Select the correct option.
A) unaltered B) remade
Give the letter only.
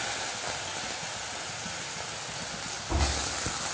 A